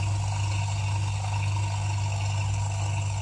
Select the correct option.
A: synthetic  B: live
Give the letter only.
B